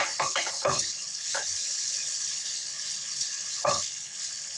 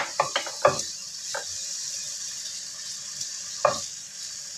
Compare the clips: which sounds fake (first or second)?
first